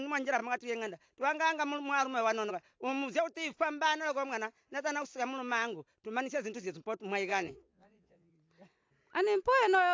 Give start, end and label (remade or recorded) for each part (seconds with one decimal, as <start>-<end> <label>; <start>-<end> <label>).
0.0-7.3 recorded; 7.3-8.3 remade; 8.3-9.9 recorded